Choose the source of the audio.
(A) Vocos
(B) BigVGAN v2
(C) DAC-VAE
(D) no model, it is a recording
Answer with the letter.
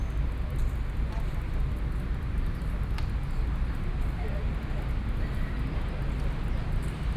D